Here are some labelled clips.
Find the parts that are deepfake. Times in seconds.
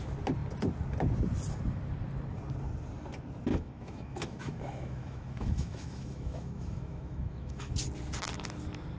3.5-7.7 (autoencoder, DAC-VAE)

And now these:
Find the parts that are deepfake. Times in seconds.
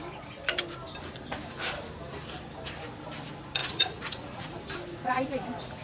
3.6-4.5 (vocoder, Vocos)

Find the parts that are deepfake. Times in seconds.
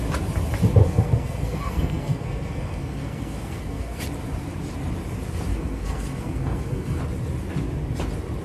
0.8-4.0 (codec, SNAC); 5.5-7.0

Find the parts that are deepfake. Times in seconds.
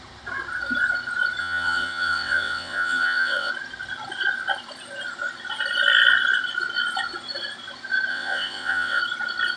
1.4-3.5 (vocoder, WaveNeXt); 8.1-9.0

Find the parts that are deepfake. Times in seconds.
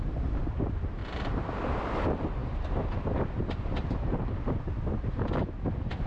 1.0-1.5 (vocoder, BigVGAN v2)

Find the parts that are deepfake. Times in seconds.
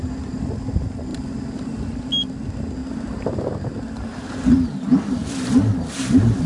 none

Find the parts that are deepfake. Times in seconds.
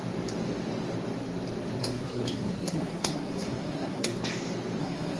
1.8-4.2 (codec, SNAC); 4.8-5.2